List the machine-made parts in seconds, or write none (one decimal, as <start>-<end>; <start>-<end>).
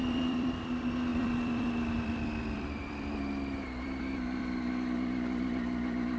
0.0-0.7; 1.1-4.4